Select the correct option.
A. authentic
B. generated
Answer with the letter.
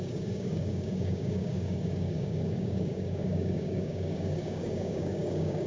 B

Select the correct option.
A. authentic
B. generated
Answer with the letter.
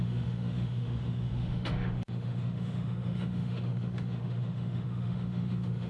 B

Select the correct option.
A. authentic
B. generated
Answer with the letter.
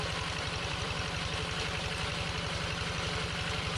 B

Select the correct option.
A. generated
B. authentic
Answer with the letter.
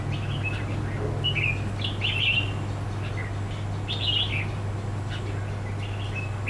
B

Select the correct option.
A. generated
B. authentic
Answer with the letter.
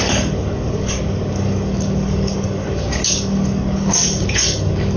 A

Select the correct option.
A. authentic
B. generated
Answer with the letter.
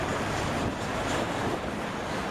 B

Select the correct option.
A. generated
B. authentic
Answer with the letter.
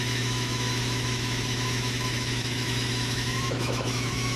A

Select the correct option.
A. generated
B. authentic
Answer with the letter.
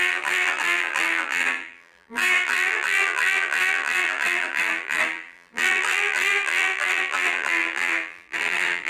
A